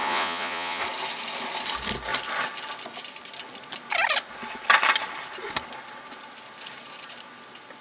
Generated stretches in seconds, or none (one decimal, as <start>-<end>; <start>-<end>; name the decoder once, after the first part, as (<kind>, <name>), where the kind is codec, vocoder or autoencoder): 0.0-0.8 (vocoder, Vocos)